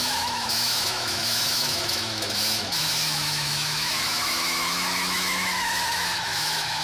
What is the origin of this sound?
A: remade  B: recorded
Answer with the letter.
A